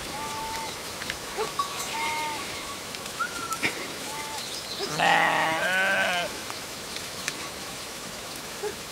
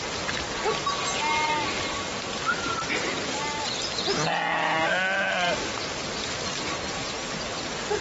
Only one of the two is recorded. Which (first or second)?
second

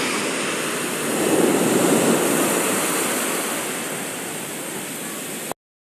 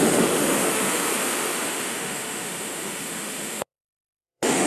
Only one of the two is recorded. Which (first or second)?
first